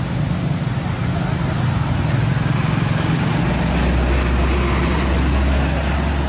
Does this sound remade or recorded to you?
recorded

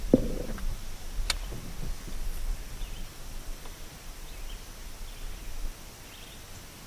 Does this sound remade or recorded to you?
recorded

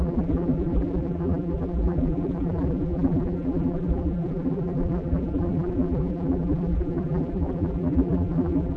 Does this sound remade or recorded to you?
remade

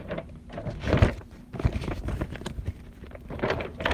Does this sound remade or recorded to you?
remade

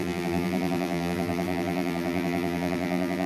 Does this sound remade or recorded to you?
remade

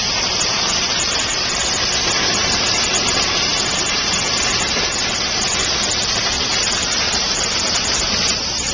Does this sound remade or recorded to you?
remade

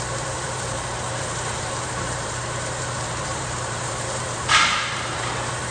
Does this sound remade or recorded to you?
remade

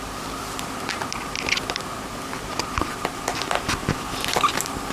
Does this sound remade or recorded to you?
remade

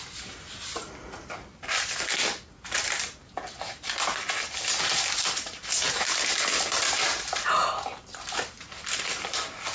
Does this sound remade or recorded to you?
recorded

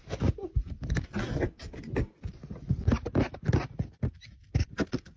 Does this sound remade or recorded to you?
recorded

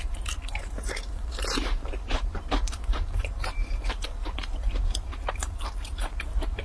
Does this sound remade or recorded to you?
remade